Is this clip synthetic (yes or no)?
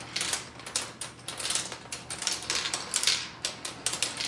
no